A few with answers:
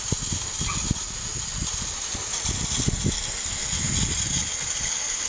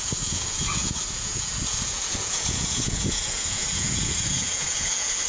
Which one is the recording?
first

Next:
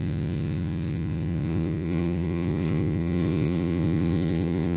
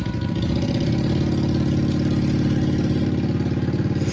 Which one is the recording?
second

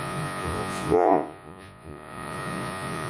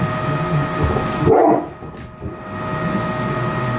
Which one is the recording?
second